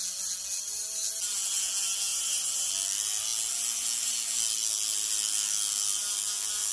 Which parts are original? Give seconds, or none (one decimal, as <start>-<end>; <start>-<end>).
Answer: 0.0-2.1; 2.7-6.7